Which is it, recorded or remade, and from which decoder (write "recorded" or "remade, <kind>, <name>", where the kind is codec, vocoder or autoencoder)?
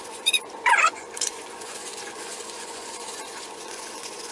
remade, vocoder, Vocos